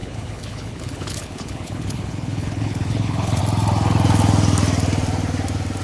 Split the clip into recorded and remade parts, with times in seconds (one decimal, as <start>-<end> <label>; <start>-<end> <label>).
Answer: 0.0-3.4 remade; 3.4-5.8 recorded